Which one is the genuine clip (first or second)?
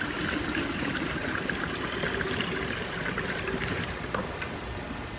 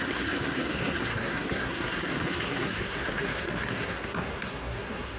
first